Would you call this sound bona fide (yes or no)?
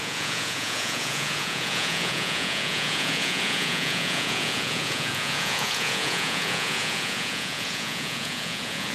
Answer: no